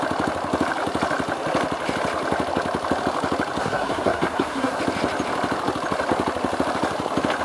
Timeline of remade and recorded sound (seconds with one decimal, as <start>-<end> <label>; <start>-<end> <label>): 0.0-3.6 recorded; 3.6-4.8 remade; 4.8-7.4 recorded